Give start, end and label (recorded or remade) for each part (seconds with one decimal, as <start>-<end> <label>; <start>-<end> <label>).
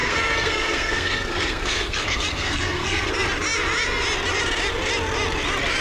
0.0-3.1 remade; 3.1-5.8 recorded